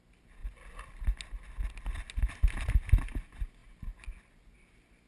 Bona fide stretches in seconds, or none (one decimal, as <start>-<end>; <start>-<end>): 0.0-5.1